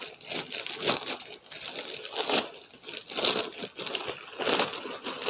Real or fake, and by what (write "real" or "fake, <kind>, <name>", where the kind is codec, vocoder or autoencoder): real